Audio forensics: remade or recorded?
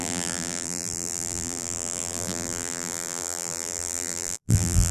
remade